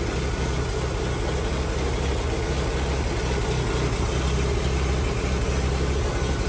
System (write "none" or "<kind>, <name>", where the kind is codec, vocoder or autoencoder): none